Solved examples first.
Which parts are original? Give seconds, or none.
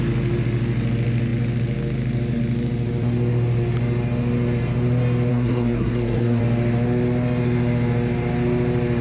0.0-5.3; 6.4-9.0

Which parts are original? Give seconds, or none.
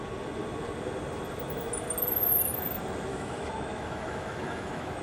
0.0-3.1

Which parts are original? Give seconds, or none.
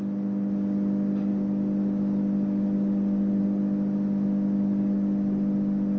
0.0-6.0